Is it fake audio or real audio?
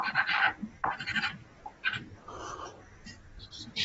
real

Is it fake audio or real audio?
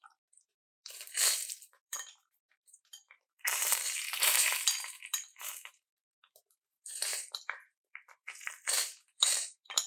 fake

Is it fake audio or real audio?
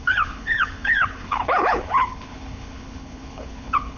fake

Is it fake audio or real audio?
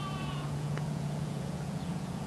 fake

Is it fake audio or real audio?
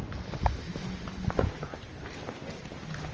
real